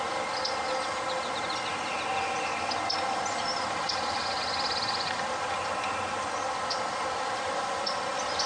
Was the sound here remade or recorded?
recorded